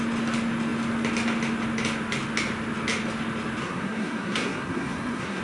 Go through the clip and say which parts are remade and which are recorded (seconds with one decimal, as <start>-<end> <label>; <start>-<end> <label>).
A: 0.0-3.6 recorded; 3.6-5.4 remade